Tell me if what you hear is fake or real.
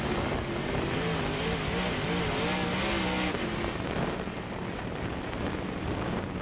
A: real